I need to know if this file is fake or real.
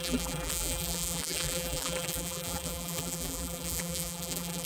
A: fake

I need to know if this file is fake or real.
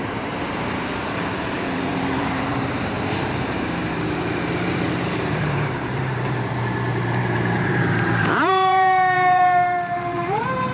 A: fake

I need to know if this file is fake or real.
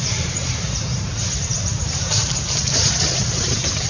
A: fake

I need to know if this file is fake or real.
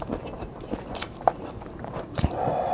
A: fake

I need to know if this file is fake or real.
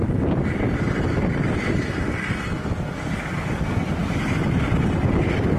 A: real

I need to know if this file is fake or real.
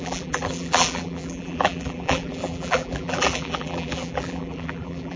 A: fake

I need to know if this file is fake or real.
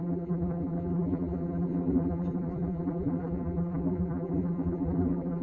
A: fake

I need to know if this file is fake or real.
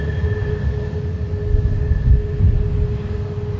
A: real